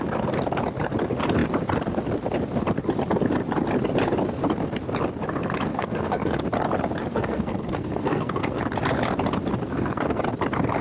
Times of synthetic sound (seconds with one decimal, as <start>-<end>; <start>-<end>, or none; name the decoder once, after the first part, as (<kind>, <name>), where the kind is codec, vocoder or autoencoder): 5.7-6.4 (codec, SNAC); 7.1-8.6; 9.7-10.2